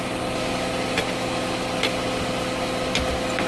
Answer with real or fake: real